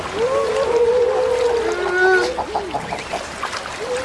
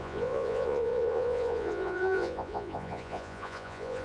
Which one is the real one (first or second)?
first